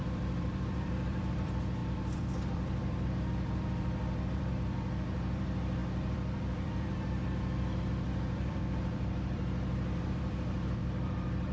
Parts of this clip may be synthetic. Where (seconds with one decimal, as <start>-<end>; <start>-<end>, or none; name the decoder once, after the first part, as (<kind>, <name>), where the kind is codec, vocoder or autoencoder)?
0.0-11.5 (vocoder, BigVGAN v2)